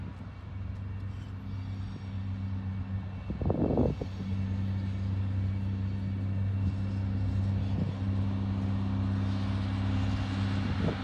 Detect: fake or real real